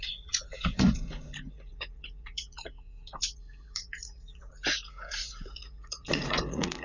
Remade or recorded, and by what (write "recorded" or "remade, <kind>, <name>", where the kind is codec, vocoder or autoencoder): remade, vocoder, Vocos